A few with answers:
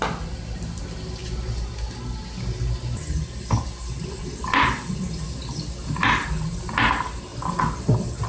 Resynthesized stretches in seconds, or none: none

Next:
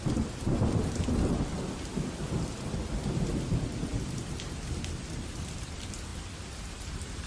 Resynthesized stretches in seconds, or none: 0.0-7.3 (vocoder, BigVGAN v2)

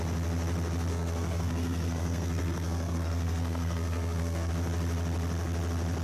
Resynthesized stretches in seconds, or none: 0.9-4.5 (codec, SNAC)